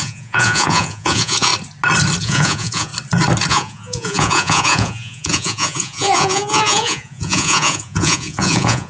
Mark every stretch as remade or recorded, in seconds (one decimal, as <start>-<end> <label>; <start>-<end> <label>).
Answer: 0.0-1.5 remade; 1.5-2.2 recorded; 2.2-2.9 remade; 2.9-3.5 recorded; 3.5-8.9 remade